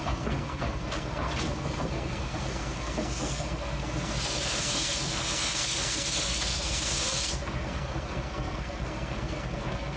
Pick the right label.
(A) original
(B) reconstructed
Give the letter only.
B